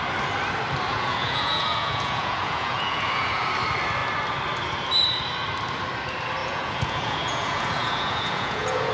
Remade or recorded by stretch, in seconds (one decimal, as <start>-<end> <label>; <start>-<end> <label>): 0.0-0.9 recorded; 0.9-3.5 remade; 3.5-6.4 recorded; 6.4-8.9 remade